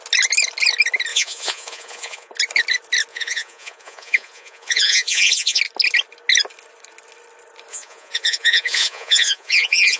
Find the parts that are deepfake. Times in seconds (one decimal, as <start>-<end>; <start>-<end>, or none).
1.1-2.3; 3.1-5.6; 7.7-10.0